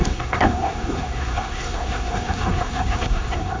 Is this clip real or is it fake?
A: fake